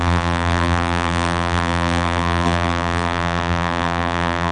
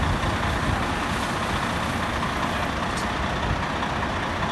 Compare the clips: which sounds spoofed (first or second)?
first